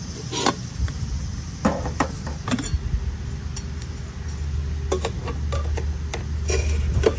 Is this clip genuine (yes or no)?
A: yes